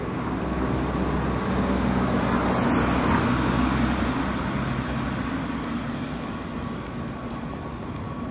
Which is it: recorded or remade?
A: recorded